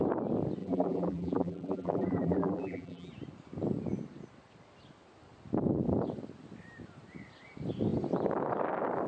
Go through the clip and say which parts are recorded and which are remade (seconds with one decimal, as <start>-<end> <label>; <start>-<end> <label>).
0.0-0.6 recorded; 0.6-3.1 remade; 3.1-9.1 recorded